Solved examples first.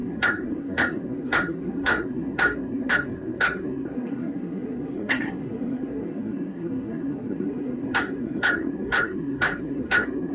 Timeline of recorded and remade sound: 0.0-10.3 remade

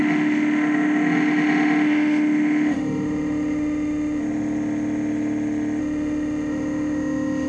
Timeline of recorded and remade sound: 0.0-4.2 remade; 4.2-5.8 recorded; 5.8-7.5 remade

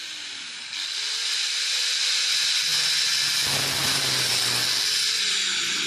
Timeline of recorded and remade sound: 0.0-5.9 recorded